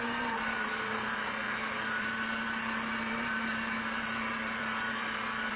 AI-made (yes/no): yes